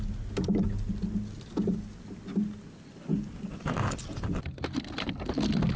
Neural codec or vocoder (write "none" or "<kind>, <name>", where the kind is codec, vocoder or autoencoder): none